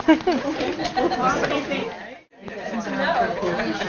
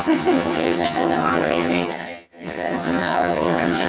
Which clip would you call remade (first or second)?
second